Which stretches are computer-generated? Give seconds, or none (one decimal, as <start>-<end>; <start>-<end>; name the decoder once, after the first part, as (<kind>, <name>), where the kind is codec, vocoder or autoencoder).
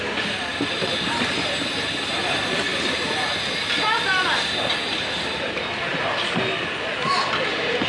none